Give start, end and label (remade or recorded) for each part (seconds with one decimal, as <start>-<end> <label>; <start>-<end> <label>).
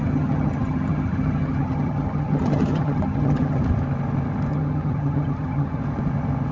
0.0-3.6 remade; 3.6-4.5 recorded; 4.5-5.8 remade; 5.8-6.5 recorded